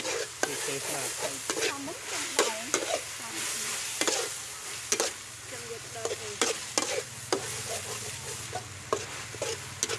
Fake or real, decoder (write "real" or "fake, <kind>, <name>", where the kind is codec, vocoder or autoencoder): real